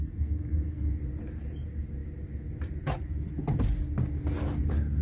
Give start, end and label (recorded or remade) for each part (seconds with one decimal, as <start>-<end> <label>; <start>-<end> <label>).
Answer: 0.0-0.9 remade; 0.9-5.0 recorded